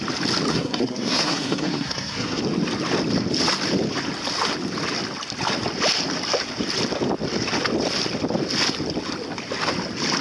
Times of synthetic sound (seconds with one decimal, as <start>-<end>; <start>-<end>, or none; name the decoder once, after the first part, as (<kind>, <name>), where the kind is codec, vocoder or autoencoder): 0.5-2.4 (codec, SNAC)